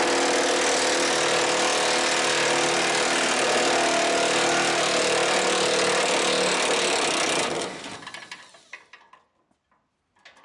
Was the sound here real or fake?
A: real